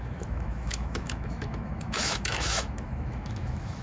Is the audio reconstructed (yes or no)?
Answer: yes